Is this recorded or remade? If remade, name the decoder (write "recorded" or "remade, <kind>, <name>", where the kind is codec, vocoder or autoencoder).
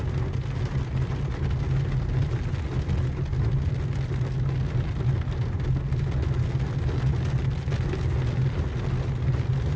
recorded